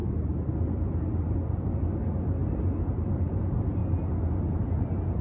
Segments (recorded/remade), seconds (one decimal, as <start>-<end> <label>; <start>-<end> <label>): 0.0-0.7 remade; 0.7-5.2 recorded